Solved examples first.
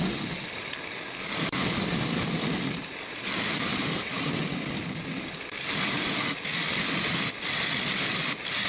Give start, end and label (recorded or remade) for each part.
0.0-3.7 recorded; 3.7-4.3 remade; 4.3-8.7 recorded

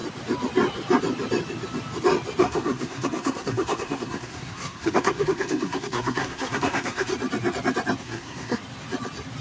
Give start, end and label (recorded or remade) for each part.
0.0-2.4 recorded; 2.4-7.1 remade; 7.1-8.0 recorded; 8.0-8.6 remade; 8.6-9.4 recorded

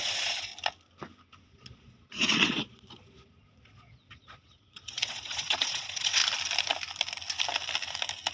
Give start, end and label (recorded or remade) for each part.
0.0-0.5 remade; 0.5-1.4 recorded; 1.4-6.2 remade; 6.2-8.3 recorded

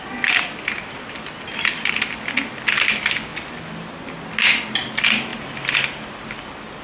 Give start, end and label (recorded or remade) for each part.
0.0-3.3 recorded; 3.3-3.9 remade; 3.9-5.3 recorded; 5.3-6.8 remade

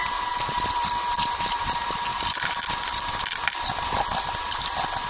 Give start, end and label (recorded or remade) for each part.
0.0-1.6 remade; 1.6-2.1 recorded; 2.1-3.2 remade; 3.2-4.1 recorded; 4.1-5.1 remade